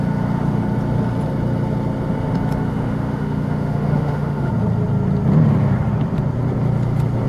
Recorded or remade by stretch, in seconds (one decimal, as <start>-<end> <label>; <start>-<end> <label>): 0.0-2.7 recorded; 2.7-4.5 remade; 4.5-7.3 recorded